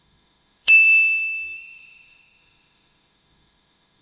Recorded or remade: remade